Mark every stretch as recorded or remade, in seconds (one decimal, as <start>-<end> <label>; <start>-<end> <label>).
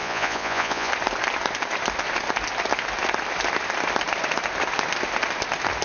0.0-0.9 remade; 0.9-5.8 recorded